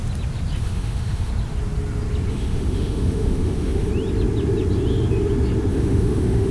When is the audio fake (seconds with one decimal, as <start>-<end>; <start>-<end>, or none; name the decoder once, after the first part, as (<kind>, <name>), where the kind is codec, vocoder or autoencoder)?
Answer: 0.6-1.3 (autoencoder, DAC-VAE); 2.3-3.9; 5.7-6.5